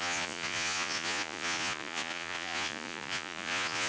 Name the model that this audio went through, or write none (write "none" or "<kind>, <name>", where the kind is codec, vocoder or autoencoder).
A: vocoder, Vocos